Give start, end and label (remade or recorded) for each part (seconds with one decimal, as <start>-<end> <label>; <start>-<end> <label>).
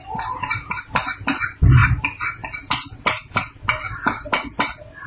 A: 0.0-5.1 recorded